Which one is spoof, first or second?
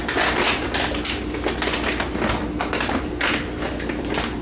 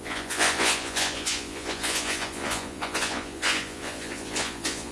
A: second